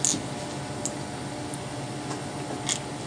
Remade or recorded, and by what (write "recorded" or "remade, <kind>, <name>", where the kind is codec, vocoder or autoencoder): recorded